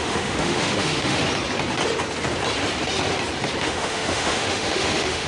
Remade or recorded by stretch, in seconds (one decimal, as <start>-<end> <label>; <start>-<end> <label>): 0.0-1.2 remade; 1.2-3.6 recorded; 3.6-5.3 remade